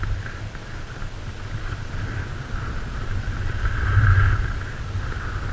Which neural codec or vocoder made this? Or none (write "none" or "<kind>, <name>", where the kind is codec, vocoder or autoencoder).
none